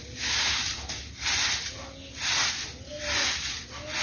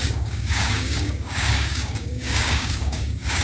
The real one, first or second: first